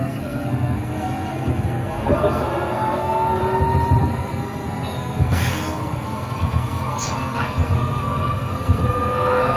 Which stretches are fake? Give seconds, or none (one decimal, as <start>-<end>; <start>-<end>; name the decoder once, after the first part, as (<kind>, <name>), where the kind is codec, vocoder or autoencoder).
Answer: 0.0-3.4 (codec, SNAC); 4.0-9.6